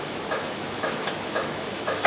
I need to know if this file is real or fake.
fake